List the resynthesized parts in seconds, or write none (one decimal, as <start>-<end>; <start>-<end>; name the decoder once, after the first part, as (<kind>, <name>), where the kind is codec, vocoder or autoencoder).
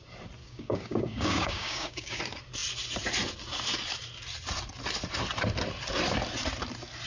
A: 0.4-2.2 (codec, DAC)